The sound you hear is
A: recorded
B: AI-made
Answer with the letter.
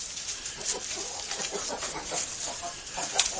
A